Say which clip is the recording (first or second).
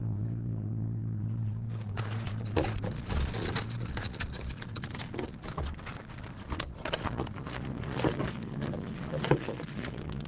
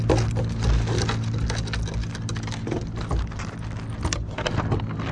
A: second